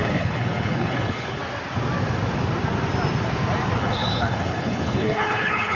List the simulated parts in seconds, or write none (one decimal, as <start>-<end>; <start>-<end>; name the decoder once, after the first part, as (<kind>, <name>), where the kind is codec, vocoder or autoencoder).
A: 0.0-1.4 (codec, HILCodec); 3.8-5.7